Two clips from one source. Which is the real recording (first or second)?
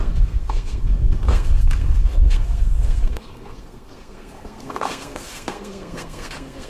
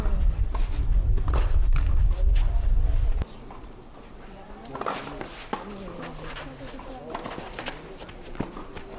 second